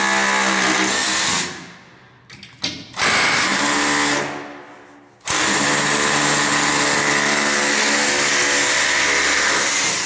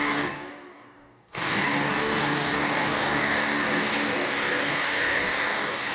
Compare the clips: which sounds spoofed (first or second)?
second